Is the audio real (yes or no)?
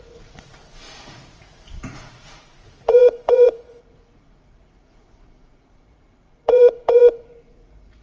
no